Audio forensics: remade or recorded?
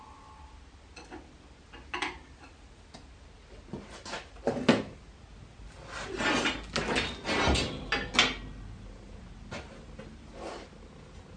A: recorded